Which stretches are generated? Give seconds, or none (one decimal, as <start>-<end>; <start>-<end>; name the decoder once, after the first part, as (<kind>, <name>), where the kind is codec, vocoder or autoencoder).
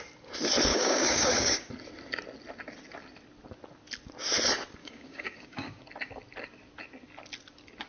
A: 0.7-1.7 (codec, DAC); 4.8-5.8